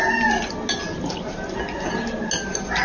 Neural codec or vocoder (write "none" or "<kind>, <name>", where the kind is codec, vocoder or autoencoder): none